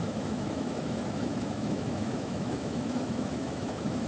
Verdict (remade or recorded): remade